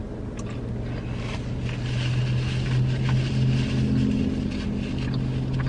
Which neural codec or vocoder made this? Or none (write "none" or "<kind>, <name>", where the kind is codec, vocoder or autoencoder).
none